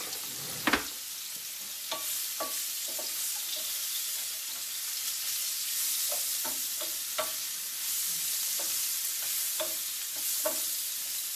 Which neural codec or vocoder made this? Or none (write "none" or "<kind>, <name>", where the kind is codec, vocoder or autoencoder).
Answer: none